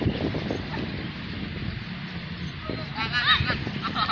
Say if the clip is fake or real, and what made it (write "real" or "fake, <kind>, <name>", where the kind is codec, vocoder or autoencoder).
real